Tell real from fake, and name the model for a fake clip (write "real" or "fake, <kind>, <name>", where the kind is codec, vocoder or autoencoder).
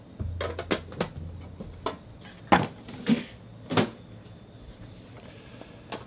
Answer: real